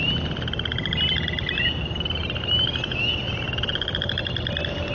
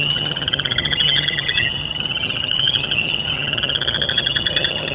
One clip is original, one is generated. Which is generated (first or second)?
second